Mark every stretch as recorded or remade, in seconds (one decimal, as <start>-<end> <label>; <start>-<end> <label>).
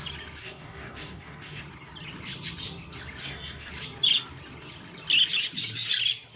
0.0-0.4 recorded; 0.4-1.6 remade; 1.6-3.2 recorded; 3.2-3.7 remade; 3.7-6.4 recorded